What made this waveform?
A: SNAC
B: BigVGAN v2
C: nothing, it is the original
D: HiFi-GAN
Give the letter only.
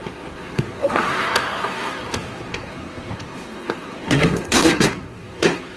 A